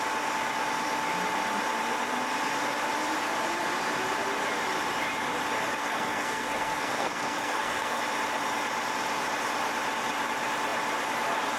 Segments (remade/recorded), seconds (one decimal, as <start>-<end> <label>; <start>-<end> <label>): 0.0-5.8 recorded; 5.8-8.0 remade; 8.0-11.6 recorded